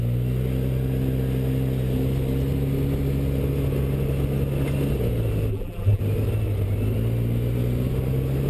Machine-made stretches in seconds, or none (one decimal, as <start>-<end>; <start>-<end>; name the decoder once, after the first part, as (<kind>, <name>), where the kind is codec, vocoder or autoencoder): 5.5-6.0 (vocoder, BigVGAN v2)